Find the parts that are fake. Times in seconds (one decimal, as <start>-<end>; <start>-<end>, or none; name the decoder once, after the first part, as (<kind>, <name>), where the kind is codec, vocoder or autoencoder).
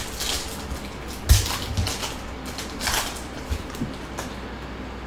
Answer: 1.8-4.3 (vocoder, BigVGAN v2)